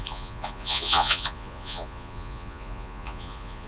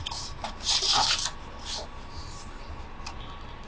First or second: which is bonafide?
second